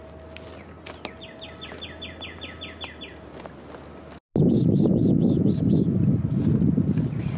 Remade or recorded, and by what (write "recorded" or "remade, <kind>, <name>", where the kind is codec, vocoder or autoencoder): recorded